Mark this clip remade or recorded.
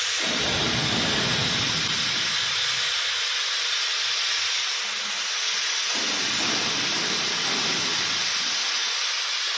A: recorded